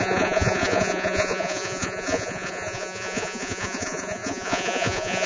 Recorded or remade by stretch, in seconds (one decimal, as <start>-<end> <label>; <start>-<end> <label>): 0.0-5.3 remade